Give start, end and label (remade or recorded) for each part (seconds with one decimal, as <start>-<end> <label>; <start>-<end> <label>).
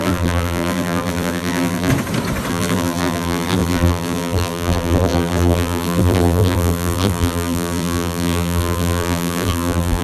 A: 0.0-1.9 remade; 1.9-2.5 recorded; 2.5-10.0 remade